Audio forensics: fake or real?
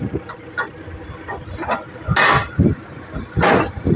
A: real